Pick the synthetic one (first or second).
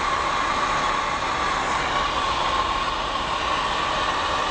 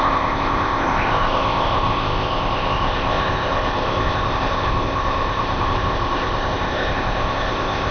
second